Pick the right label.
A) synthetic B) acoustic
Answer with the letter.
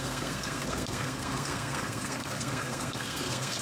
A